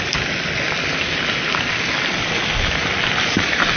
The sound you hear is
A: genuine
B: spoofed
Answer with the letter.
A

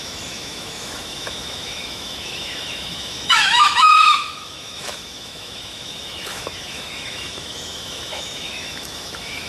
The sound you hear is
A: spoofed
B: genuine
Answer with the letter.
A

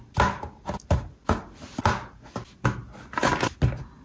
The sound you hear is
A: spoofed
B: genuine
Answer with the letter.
B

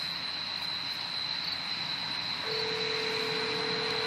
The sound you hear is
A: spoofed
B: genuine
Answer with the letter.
B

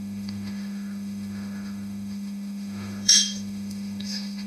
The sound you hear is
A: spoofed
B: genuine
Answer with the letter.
A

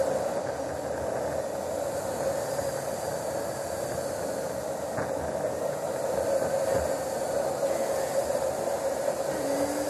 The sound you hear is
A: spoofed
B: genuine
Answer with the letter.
B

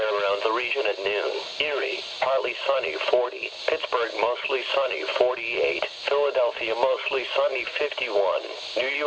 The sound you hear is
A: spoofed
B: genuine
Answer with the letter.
B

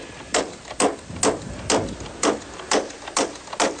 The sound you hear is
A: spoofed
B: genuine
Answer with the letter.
B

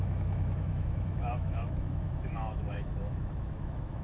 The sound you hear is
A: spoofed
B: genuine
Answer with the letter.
A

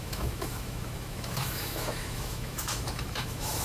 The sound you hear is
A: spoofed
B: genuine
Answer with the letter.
A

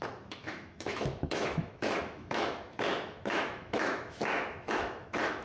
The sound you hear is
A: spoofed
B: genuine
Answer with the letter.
A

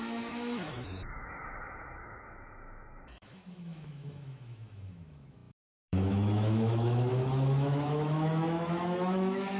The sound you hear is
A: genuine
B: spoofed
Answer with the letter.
B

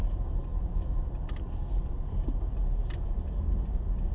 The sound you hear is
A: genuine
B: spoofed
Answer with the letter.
A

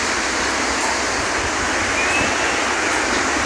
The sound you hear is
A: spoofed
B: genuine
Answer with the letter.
B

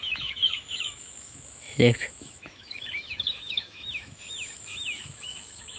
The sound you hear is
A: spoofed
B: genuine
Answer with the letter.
A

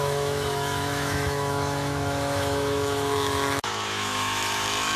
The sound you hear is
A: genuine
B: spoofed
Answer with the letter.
B